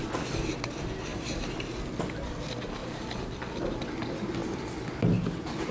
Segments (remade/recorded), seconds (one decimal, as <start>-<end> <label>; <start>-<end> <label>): 0.0-1.1 recorded; 1.1-2.3 remade; 2.3-2.8 recorded; 2.8-3.4 remade; 3.4-4.4 recorded; 4.4-4.9 remade; 4.9-5.7 recorded